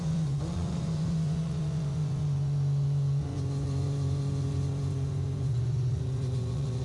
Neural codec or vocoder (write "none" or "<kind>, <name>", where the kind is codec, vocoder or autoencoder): vocoder, Vocos